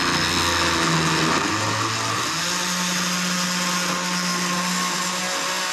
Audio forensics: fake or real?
real